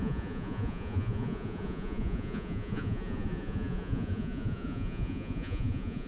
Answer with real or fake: fake